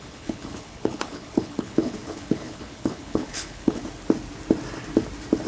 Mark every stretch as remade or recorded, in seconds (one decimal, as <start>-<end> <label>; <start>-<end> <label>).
0.0-3.8 remade; 3.8-5.5 recorded